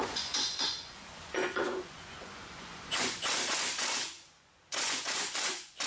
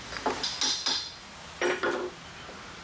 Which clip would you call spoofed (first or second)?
first